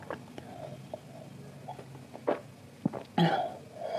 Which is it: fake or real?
real